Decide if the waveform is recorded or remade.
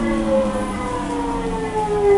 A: recorded